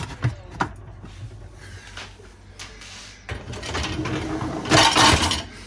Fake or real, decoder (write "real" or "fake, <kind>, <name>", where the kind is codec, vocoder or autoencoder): real